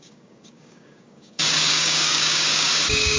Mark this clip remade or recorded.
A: remade